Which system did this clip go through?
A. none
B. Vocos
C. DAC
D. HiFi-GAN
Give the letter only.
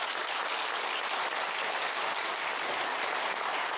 A